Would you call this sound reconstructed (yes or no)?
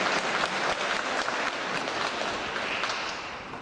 no